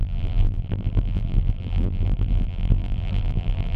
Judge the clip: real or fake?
fake